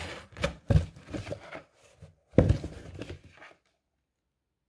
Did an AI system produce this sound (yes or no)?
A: no